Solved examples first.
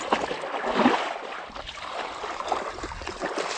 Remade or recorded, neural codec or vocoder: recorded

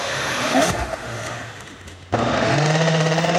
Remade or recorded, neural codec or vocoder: remade, autoencoder, DAC-VAE